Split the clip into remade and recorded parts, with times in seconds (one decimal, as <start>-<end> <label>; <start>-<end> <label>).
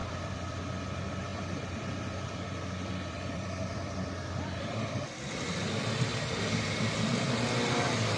0.0-0.6 remade; 0.6-1.3 recorded; 1.3-5.0 remade; 5.0-6.1 recorded; 6.1-7.4 remade; 7.4-8.2 recorded